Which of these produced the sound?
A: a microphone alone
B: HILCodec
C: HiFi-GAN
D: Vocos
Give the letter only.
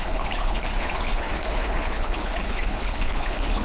B